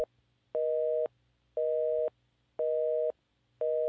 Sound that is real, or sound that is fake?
real